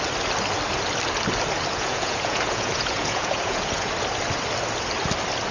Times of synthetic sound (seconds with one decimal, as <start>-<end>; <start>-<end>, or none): 1.7-3.9